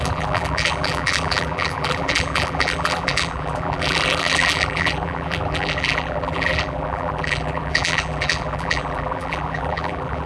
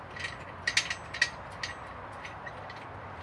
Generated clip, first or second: first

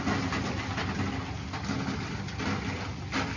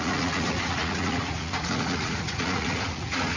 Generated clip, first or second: second